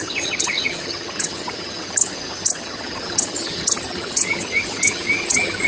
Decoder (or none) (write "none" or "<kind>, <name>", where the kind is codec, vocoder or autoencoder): vocoder, HiFi-GAN